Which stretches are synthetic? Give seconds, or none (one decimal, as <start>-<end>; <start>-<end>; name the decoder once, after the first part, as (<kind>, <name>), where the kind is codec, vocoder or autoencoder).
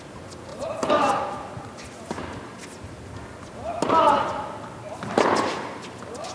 none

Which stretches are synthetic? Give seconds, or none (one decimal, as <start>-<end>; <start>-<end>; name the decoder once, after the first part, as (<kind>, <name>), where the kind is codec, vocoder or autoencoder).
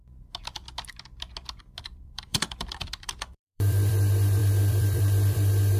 1.8-5.8 (vocoder, BigVGAN v2)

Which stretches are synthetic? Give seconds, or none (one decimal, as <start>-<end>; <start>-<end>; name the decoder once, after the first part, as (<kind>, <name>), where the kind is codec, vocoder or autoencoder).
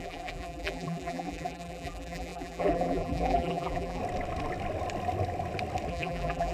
0.0-4.0 (vocoder, BigVGAN v2); 5.9-6.5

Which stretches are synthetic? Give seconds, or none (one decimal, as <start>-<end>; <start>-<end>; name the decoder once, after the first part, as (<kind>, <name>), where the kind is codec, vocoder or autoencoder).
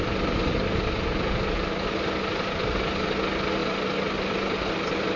none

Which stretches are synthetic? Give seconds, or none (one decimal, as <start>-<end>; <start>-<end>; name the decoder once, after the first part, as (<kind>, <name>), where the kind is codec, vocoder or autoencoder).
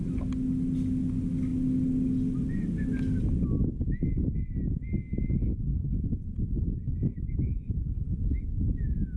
none